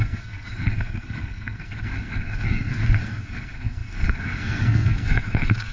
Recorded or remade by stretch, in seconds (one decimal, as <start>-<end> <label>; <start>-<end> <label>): 0.0-5.7 remade